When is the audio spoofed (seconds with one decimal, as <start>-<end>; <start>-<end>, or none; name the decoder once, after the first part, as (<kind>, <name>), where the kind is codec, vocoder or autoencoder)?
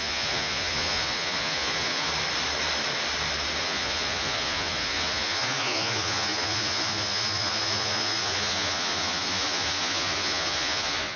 0.0-2.1 (vocoder, Vocos); 3.6-11.2